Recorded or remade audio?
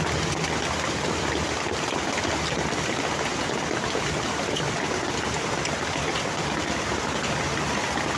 recorded